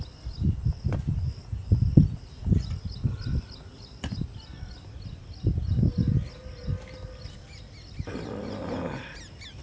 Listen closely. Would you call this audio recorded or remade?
recorded